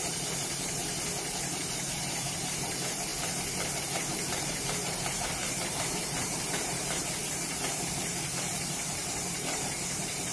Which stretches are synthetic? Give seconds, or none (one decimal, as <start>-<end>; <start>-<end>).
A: 0.0-0.8; 1.6-3.1; 3.8-10.3